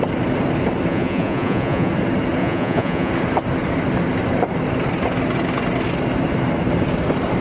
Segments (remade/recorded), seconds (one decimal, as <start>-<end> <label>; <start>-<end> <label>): 0.0-0.9 recorded; 0.9-1.9 remade; 1.9-2.4 recorded; 2.4-3.1 remade; 3.1-7.4 recorded